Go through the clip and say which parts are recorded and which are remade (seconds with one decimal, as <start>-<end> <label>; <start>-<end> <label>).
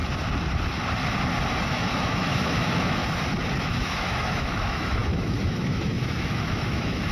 0.0-1.5 recorded; 1.5-3.0 remade; 3.0-3.6 recorded; 3.6-7.1 remade